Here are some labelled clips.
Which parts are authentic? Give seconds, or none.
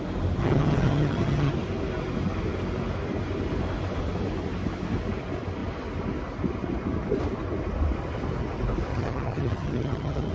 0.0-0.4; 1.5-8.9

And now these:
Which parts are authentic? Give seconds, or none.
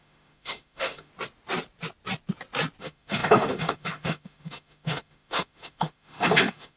1.1-2.8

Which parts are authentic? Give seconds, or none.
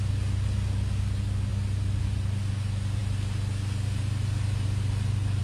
0.0-5.4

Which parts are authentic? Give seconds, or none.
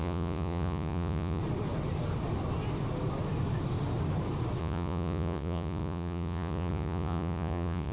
1.4-4.6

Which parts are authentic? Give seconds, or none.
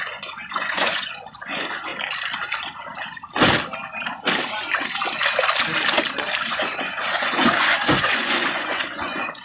1.9-6.5